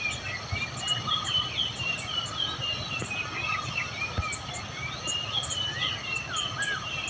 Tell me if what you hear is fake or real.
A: real